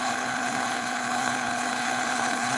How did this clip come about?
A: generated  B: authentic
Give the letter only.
A